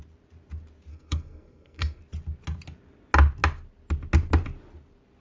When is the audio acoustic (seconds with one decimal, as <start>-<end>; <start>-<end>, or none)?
0.0-0.9; 2.0-5.2